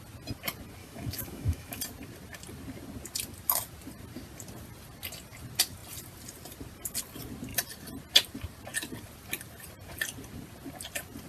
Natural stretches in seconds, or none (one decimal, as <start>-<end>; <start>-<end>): 0.0-0.8; 1.8-11.3